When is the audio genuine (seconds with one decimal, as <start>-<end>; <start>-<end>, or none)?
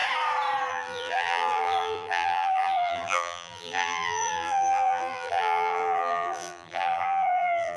0.0-0.7